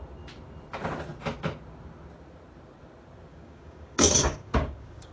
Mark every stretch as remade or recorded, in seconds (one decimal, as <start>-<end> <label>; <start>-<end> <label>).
0.0-3.3 recorded; 3.3-5.1 remade